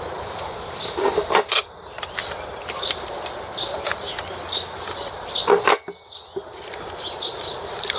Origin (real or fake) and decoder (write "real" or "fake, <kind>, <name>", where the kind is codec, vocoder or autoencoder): real